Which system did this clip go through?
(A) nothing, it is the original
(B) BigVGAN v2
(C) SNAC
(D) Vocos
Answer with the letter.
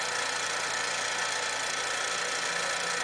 A